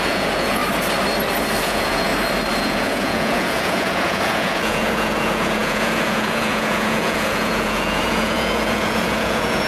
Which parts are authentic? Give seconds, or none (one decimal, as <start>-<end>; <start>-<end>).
0.6-1.6; 2.1-2.6